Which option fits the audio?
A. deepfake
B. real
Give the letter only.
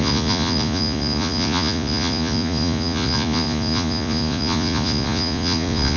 A